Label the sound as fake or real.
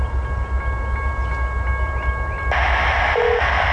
real